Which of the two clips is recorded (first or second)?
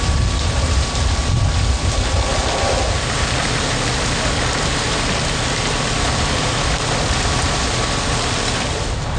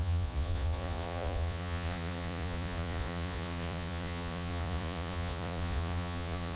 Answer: first